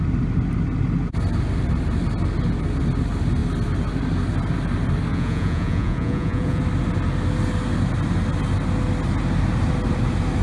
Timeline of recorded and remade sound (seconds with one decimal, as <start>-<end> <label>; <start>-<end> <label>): 0.0-5.1 recorded; 5.1-6.6 remade; 6.6-10.4 recorded